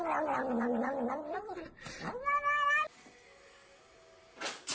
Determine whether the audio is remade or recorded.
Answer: recorded